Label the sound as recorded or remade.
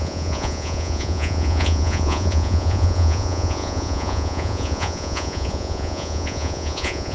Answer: remade